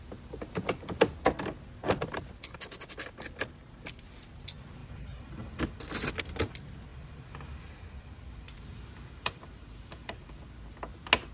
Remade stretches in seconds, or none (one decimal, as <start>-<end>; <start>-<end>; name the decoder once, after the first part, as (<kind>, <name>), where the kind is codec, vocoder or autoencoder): 4.8-6.1 (vocoder, BigVGAN v2); 6.9-10.3